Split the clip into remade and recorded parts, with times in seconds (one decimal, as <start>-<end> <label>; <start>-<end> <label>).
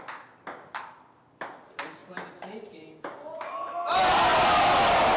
0.0-5.2 recorded